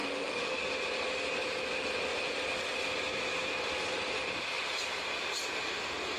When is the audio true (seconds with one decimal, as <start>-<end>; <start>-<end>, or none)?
0.6-6.2

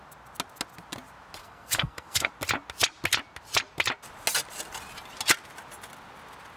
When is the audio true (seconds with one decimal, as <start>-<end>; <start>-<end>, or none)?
0.0-1.4; 2.3-6.6

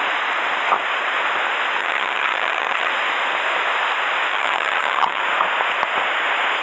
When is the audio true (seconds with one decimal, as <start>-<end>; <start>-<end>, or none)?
0.0-1.8; 2.9-4.3; 5.2-6.6

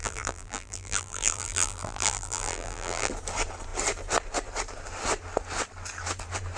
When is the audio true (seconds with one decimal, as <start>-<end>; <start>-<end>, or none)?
3.1-6.6

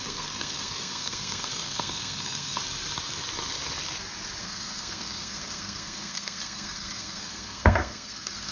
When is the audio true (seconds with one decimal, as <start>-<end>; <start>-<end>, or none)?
2.6-4.4